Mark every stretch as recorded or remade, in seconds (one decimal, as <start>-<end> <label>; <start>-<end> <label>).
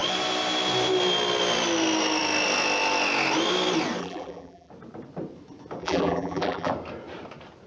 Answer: 0.0-4.0 recorded; 4.0-4.7 remade; 4.7-5.8 recorded; 5.8-6.7 remade; 6.7-7.7 recorded